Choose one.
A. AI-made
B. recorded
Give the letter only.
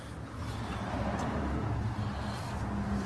B